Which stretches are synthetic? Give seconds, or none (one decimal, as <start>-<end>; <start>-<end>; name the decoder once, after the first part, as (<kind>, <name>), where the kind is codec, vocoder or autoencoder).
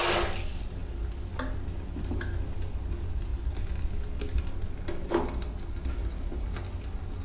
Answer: 6.0-6.6 (vocoder, BigVGAN v2)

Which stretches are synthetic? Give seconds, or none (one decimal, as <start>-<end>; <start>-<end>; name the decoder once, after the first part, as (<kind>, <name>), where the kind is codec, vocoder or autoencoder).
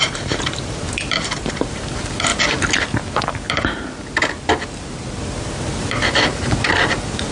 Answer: 0.0-2.3 (vocoder, BigVGAN v2); 5.2-7.3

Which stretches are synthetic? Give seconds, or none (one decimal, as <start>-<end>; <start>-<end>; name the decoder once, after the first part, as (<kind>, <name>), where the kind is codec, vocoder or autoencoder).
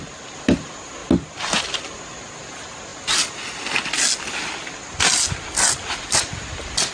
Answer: none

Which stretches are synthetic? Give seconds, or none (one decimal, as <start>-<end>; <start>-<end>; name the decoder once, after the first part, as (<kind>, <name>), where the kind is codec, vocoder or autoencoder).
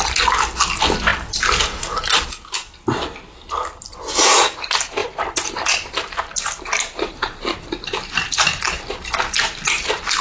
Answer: 5.0-8.7 (vocoder, BigVGAN v2)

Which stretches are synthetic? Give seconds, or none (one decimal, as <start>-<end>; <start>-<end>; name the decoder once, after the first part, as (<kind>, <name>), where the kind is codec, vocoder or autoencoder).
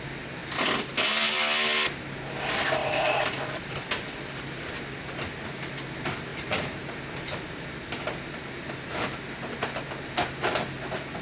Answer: 2.8-4.6 (vocoder, BigVGAN v2)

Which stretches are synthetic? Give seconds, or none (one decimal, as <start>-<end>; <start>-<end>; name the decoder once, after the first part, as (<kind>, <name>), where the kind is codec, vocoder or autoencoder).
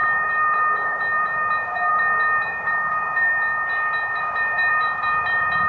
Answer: 0.0-3.5 (vocoder, BigVGAN v2); 4.2-5.7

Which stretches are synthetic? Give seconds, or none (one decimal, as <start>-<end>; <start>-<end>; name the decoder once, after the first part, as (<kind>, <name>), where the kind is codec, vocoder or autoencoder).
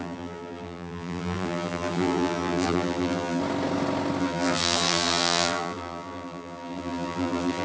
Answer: 0.0-3.4 (vocoder, BigVGAN v2); 4.2-7.6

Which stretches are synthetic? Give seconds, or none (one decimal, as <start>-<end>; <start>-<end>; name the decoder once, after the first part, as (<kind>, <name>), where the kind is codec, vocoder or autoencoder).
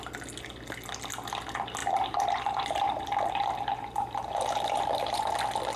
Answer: 1.8-5.3 (vocoder, BigVGAN v2)